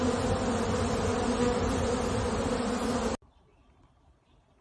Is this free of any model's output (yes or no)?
yes